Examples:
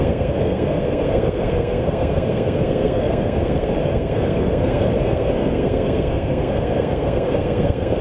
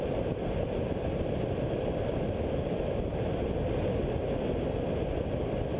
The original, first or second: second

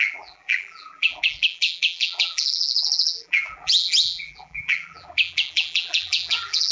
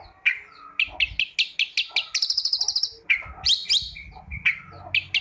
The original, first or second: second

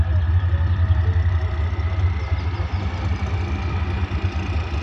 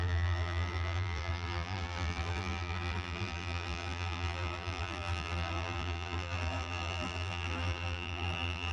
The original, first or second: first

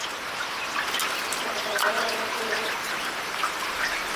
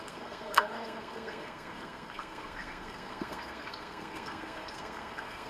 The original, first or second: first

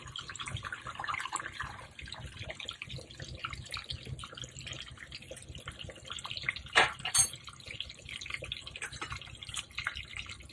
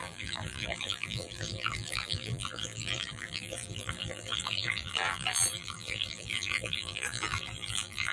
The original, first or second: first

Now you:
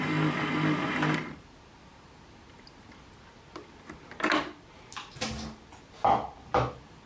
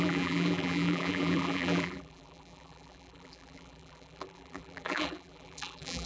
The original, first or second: first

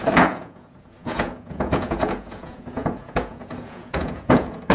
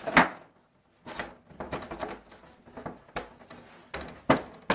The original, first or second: second